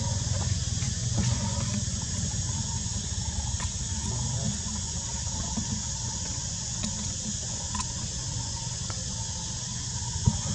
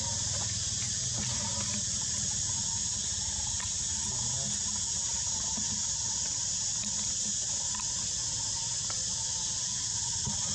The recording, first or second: second